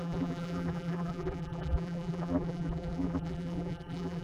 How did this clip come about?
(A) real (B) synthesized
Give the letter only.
B